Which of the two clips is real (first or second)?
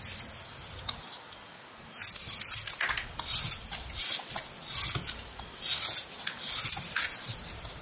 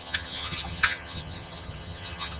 first